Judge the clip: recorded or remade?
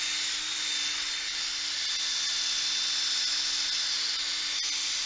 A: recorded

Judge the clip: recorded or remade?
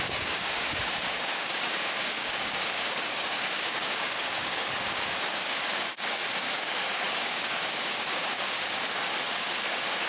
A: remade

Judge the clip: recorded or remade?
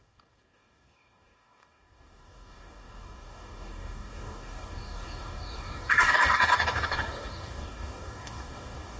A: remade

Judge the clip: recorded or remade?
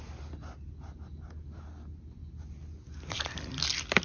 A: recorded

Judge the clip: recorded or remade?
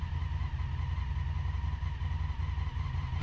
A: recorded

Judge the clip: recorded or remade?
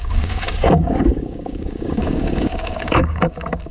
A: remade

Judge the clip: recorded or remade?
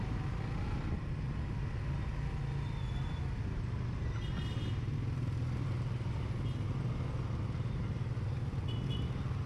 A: recorded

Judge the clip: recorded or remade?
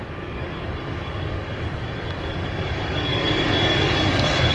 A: remade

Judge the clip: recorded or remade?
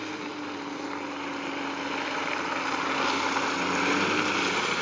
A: recorded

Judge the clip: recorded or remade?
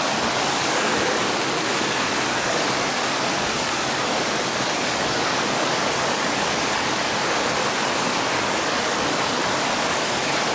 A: remade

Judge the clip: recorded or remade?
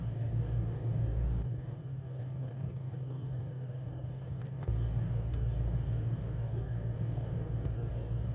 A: remade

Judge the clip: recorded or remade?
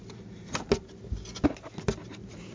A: recorded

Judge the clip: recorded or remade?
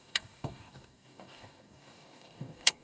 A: remade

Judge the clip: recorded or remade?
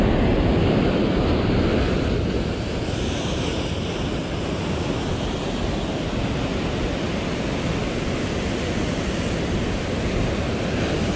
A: recorded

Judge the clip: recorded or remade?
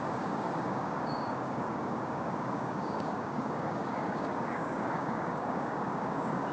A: remade